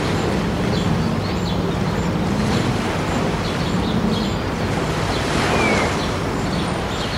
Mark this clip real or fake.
fake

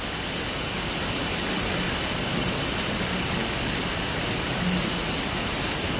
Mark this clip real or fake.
real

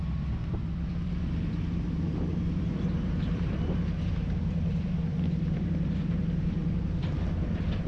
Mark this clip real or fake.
fake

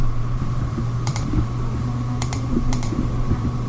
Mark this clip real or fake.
fake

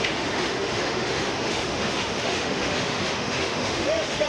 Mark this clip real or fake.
fake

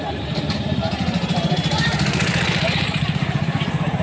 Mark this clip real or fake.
fake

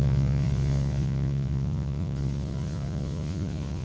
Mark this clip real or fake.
fake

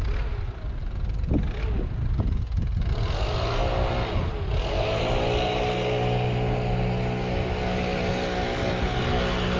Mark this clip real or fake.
real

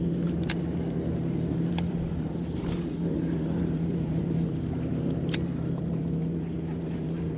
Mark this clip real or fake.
fake